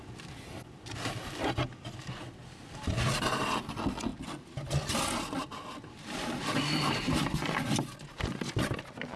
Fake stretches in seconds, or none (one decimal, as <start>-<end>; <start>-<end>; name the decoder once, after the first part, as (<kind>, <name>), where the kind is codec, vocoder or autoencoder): none